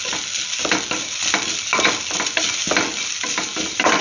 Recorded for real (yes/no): yes